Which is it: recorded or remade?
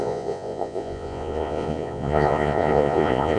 remade